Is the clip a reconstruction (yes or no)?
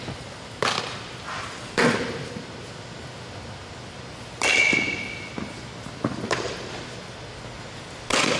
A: no